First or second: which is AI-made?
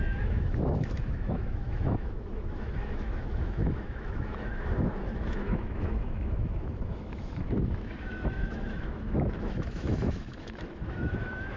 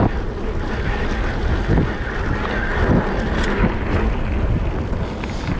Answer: first